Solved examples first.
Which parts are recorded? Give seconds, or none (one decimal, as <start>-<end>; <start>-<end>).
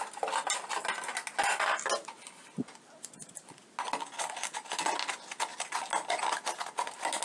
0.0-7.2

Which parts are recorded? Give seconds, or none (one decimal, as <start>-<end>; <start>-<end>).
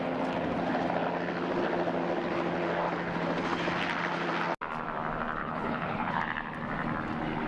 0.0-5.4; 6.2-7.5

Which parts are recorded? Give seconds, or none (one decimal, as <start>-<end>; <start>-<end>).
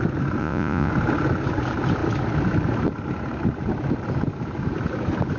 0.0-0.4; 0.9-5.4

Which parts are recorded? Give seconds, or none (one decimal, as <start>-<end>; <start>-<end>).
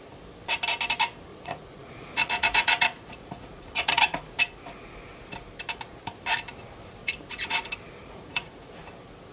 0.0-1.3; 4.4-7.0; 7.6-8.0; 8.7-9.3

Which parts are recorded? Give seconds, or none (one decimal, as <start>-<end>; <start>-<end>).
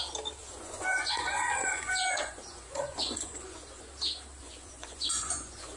0.0-0.4; 3.9-4.4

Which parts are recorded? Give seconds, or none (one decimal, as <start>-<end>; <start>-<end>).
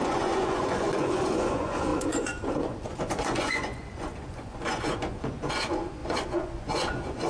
none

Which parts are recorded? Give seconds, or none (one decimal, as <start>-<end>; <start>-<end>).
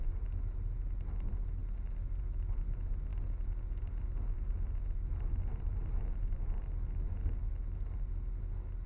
0.0-8.9